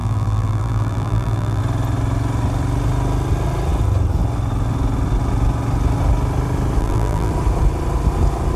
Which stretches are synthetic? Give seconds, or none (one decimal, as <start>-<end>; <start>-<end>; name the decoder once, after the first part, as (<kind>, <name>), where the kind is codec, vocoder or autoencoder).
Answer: 0.0-1.6 (vocoder, BigVGAN v2); 6.8-7.3